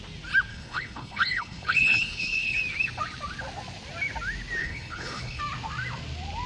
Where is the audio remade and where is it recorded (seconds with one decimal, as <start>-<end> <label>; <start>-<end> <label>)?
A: 0.0-0.5 recorded; 0.5-2.6 remade; 2.6-4.6 recorded; 4.6-5.4 remade; 5.4-6.5 recorded